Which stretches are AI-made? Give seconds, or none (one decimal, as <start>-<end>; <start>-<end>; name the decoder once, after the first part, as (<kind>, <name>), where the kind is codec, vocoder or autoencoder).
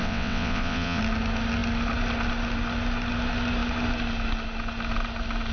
0.0-1.0 (vocoder, WaveNeXt)